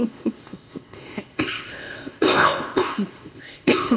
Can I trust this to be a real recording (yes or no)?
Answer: no